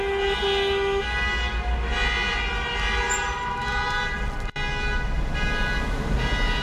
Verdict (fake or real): real